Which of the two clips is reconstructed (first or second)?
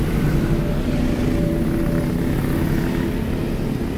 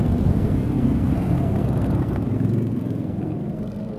second